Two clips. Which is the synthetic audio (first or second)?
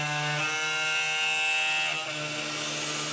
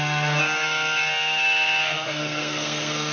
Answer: second